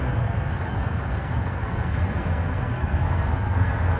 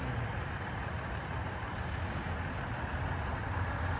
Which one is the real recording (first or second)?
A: second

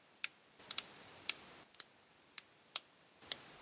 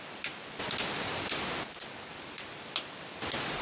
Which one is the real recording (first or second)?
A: second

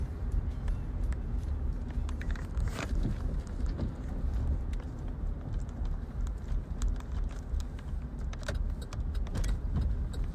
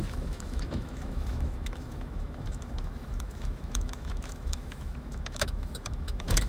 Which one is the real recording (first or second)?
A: first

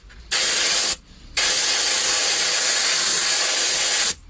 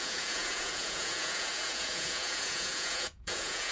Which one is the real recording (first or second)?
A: first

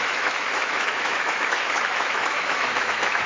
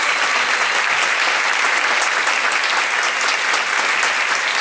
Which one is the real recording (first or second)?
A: second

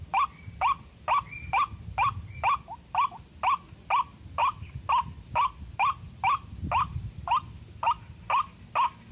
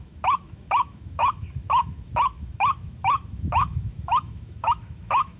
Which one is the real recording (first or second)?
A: first